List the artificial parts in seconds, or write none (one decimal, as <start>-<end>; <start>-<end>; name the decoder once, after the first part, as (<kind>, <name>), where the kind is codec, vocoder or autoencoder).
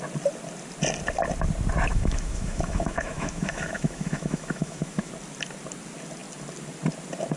1.9-5.1 (autoencoder, DAC-VAE)